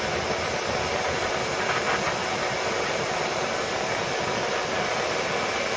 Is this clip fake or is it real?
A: real